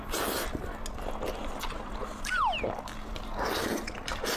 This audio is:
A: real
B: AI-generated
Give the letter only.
A